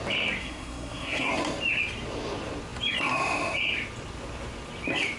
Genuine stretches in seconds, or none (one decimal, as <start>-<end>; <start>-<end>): 0.0-0.4; 1.3-5.2